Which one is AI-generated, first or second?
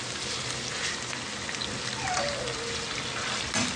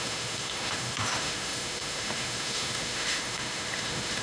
second